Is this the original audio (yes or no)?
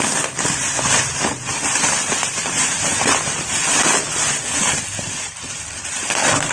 no